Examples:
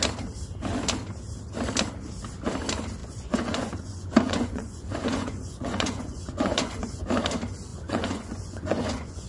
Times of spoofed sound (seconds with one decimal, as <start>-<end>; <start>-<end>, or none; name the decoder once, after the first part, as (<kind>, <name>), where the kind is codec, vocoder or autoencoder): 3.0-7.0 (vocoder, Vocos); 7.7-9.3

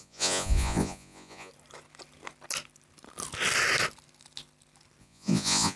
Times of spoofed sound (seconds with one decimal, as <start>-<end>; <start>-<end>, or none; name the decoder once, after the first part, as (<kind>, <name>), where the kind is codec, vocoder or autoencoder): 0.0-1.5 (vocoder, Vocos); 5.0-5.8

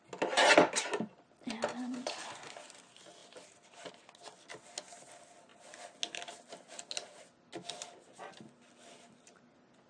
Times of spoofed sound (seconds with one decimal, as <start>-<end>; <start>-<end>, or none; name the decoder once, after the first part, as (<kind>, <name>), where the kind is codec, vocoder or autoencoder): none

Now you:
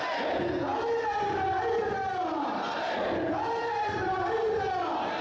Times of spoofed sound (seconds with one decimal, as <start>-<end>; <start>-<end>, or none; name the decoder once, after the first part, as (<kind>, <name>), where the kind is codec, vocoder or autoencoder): none